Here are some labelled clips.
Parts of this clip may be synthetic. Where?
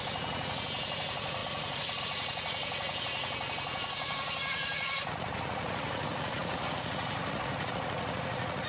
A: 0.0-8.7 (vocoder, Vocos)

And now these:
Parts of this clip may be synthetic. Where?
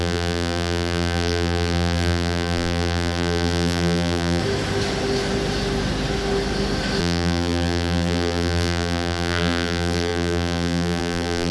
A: 0.0-4.4 (vocoder, BigVGAN v2); 7.0-11.5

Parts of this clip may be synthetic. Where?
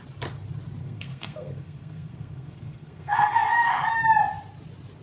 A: 0.8-3.8 (codec, SNAC)